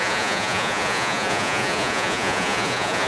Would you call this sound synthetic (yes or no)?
yes